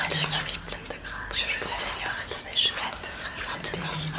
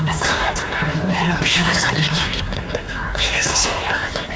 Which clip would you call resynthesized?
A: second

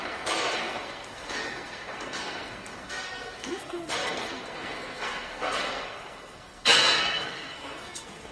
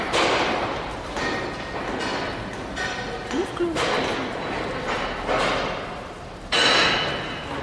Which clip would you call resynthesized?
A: first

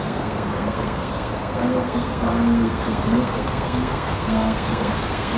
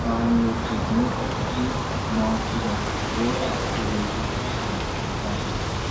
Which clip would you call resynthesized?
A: first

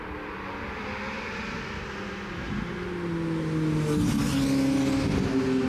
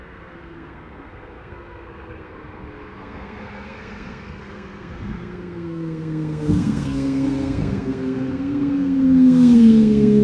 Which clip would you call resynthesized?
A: second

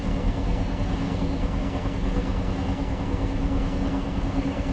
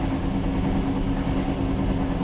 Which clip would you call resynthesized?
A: first